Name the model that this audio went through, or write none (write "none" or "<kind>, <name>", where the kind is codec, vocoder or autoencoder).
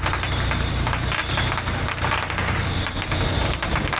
none